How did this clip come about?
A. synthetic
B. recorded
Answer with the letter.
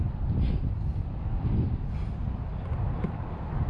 B